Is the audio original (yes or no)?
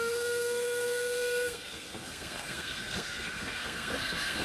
no